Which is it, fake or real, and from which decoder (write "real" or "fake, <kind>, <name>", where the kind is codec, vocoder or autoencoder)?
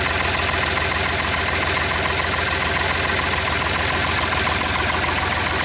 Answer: real